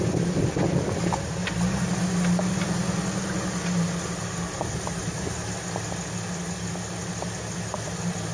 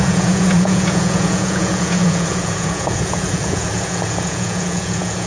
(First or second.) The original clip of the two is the first